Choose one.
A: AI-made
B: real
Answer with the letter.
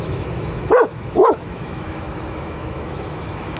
A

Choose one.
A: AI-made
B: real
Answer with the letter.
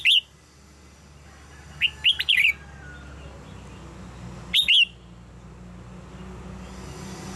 B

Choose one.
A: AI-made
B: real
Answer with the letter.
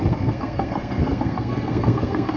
A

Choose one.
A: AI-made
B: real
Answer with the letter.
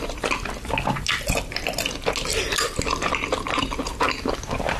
B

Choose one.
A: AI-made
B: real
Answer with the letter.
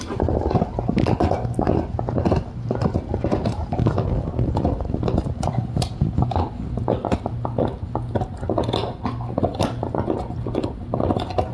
B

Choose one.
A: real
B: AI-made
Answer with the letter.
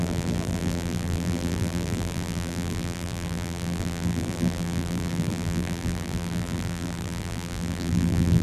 B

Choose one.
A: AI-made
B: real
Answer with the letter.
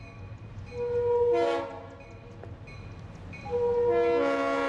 B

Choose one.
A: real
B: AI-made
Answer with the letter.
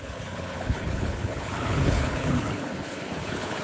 B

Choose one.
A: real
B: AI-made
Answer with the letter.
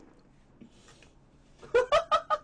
A